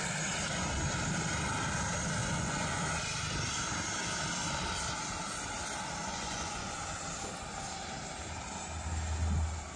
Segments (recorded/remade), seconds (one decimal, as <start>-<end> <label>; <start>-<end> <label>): 0.0-2.2 recorded; 2.2-2.8 remade; 2.8-6.0 recorded; 6.0-6.8 remade; 6.8-9.8 recorded